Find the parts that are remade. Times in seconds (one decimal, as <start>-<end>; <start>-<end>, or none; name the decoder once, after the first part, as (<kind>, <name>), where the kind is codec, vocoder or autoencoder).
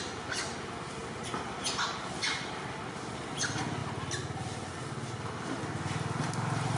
none